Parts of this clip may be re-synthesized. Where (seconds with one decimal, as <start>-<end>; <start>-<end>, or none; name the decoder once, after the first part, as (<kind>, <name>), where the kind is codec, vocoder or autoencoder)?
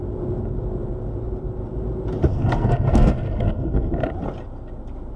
2.3-3.9 (codec, SNAC)